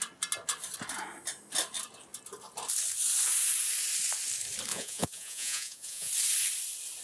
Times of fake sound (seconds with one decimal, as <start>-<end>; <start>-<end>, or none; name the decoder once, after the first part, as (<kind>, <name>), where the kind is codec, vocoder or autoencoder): 4.7-6.1 (vocoder, Vocos)